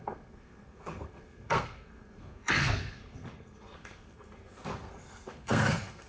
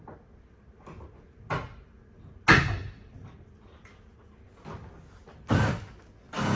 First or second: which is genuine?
second